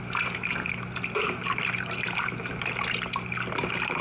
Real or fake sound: real